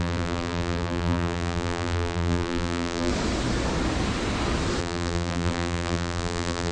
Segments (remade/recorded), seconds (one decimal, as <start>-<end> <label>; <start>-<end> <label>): 0.0-3.1 remade; 3.1-4.8 recorded; 4.8-6.7 remade